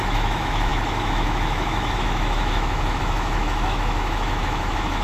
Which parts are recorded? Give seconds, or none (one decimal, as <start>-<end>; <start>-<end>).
none

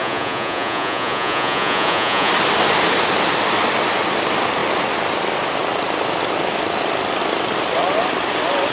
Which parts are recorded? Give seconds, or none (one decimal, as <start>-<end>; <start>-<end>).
2.3-8.7